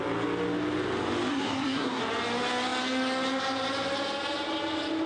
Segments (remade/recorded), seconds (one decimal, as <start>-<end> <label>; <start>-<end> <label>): 0.0-1.3 recorded; 1.3-2.0 remade; 2.0-5.1 recorded